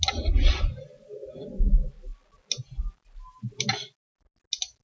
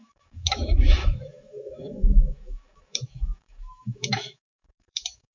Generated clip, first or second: second